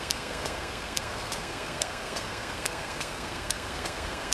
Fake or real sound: fake